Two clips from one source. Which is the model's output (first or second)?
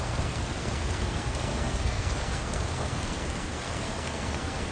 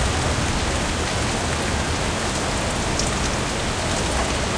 first